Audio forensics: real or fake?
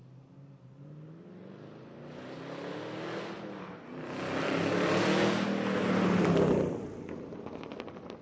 real